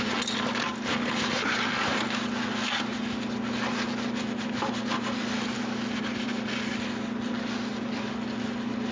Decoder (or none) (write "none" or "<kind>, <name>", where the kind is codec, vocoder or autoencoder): none